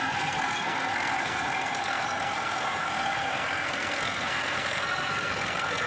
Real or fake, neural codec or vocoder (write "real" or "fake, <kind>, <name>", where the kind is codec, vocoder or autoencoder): fake, codec, SNAC